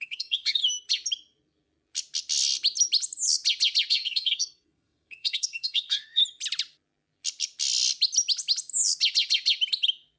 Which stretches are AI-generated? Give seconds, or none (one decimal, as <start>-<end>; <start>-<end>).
0.0-0.6; 3.9-6.2